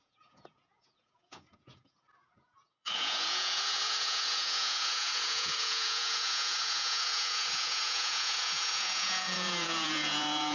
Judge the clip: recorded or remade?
remade